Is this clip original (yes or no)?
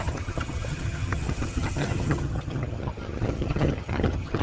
no